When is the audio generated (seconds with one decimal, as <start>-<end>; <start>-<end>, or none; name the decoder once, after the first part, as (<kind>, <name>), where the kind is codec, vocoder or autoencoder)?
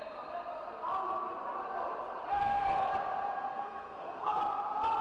2.3-2.9 (codec, SNAC); 3.5-4.4